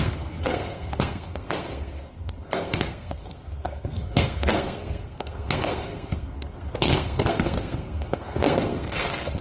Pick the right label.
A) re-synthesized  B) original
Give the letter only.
A